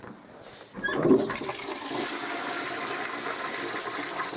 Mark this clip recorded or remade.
recorded